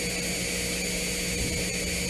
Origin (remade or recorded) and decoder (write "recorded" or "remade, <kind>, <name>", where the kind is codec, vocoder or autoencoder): recorded